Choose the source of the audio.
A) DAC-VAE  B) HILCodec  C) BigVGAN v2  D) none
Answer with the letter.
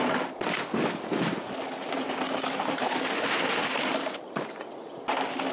D